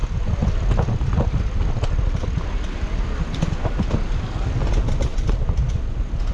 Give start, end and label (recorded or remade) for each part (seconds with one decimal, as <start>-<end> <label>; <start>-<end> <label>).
0.0-6.3 recorded